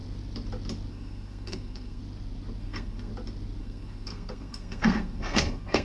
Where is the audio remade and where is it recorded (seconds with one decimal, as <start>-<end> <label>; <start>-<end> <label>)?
0.0-0.9 recorded; 0.9-2.0 remade; 2.0-2.6 recorded; 2.6-3.1 remade; 3.1-3.6 recorded; 3.6-5.8 remade